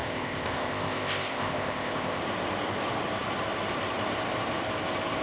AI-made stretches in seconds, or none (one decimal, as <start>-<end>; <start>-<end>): 0.0-2.2